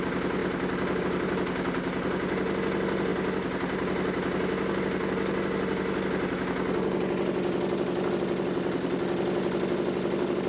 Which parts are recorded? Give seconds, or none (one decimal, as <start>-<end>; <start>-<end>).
0.0-10.5